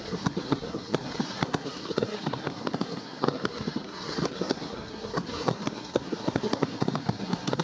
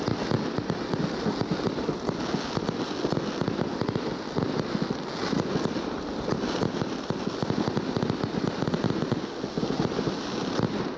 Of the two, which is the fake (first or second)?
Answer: first